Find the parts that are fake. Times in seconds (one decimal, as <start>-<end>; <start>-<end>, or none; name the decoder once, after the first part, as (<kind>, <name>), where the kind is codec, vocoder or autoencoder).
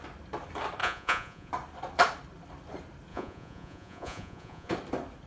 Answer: 0.8-1.5 (vocoder, Vocos); 3.1-4.7